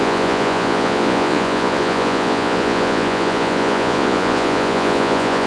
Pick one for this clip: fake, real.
fake